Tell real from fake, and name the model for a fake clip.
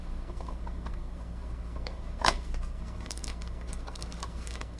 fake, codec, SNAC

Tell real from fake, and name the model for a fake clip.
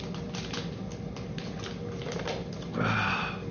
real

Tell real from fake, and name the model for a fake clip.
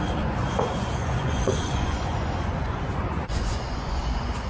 fake, vocoder, Vocos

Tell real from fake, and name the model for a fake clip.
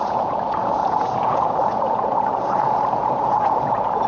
fake, vocoder, Vocos